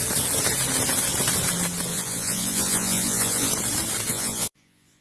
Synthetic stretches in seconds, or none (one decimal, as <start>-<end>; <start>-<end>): 1.9-3.5; 4.1-5.0